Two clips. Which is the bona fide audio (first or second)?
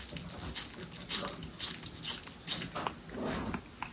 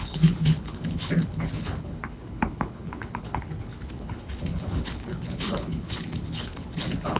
first